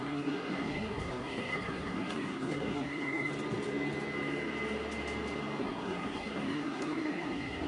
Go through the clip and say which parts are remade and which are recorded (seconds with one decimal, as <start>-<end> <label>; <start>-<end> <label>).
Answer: 0.0-3.3 remade; 3.3-5.6 recorded; 5.6-7.7 remade